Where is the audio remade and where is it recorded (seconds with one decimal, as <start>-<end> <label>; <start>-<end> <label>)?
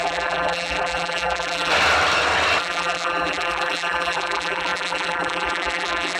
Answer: 0.0-1.7 remade; 1.7-2.6 recorded; 2.6-6.2 remade